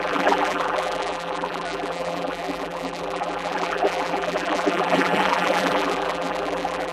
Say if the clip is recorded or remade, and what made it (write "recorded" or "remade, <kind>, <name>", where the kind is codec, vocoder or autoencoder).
remade, vocoder, BigVGAN v2